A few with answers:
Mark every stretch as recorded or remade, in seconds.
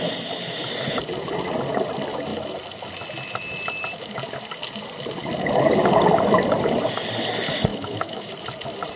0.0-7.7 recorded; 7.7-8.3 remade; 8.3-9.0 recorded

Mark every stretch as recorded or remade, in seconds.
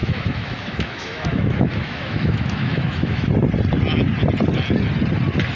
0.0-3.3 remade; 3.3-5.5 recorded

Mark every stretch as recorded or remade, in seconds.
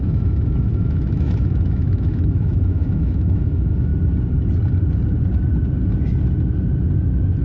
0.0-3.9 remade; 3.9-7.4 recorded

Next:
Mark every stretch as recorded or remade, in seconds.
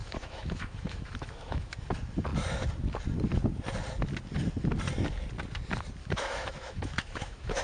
0.0-1.8 remade; 1.8-6.0 recorded; 6.0-7.6 remade